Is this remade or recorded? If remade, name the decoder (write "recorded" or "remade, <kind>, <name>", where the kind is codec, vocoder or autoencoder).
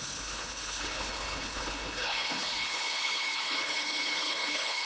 remade, codec, HILCodec